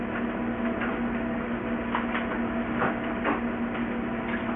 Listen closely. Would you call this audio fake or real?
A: real